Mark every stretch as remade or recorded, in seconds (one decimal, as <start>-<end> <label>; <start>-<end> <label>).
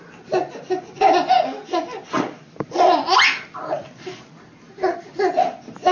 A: 0.0-5.9 recorded